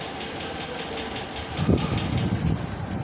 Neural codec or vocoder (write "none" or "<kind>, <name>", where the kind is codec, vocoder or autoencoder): none